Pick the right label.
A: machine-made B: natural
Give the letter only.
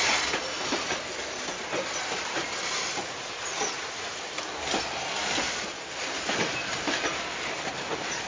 A